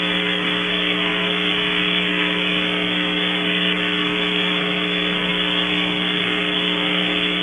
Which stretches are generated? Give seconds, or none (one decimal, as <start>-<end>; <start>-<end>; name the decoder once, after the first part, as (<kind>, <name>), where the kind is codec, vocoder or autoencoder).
0.0-7.4 (codec, SNAC)